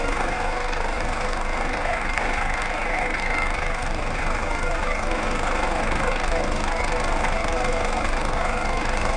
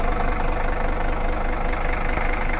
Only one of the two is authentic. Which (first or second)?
second